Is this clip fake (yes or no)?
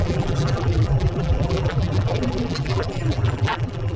yes